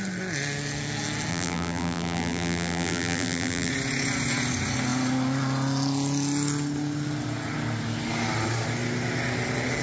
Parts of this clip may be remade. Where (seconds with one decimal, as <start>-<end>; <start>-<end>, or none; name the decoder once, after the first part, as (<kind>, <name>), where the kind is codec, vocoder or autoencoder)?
1.3-3.7 (vocoder, BigVGAN v2)